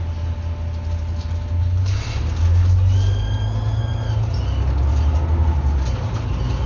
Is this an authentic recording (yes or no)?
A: yes